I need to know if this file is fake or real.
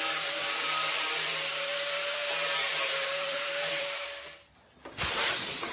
fake